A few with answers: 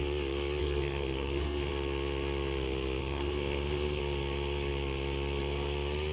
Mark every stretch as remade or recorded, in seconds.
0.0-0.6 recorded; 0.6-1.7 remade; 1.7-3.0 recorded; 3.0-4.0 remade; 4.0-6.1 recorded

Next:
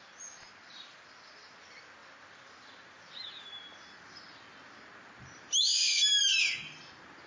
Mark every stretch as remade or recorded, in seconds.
0.0-7.3 recorded

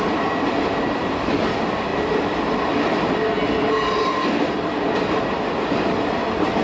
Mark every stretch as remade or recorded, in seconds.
0.0-6.6 recorded

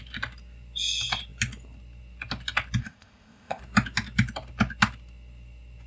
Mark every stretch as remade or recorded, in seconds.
0.0-2.8 recorded; 2.8-3.6 remade; 3.6-5.9 recorded

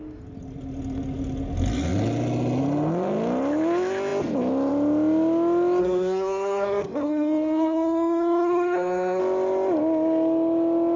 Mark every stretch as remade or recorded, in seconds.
0.0-5.8 recorded; 5.8-9.2 remade; 9.2-11.0 recorded

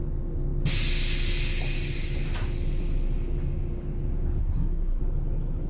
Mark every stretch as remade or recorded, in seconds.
0.0-4.4 recorded; 4.4-5.0 remade; 5.0-5.7 recorded